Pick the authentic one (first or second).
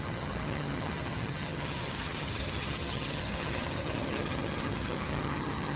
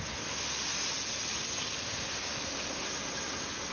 second